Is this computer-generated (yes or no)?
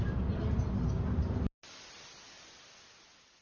no